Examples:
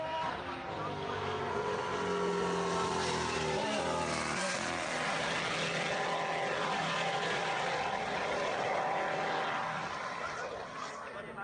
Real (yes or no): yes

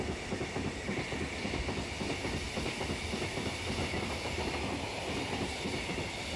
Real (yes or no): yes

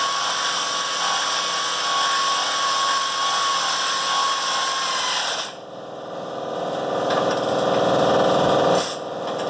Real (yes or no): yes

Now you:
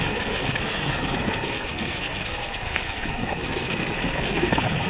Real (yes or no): no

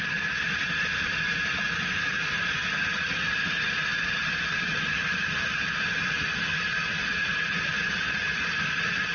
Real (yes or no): yes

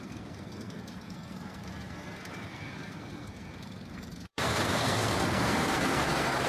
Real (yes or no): no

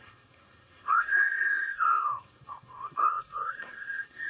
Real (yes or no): no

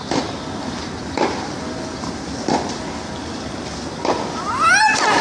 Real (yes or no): yes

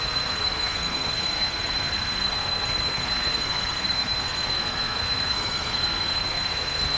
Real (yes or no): no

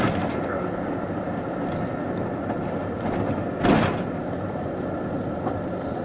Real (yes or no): yes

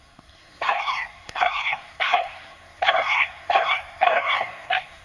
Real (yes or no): no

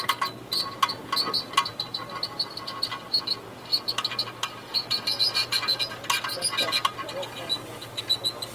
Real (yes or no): yes